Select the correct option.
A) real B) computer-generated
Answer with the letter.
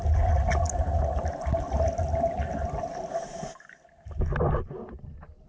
A